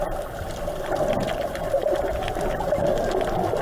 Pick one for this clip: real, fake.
real